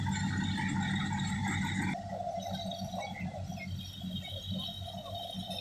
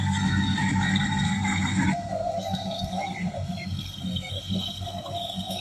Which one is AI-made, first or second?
second